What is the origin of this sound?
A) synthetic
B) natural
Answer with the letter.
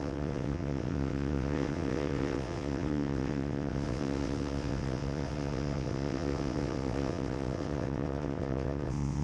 A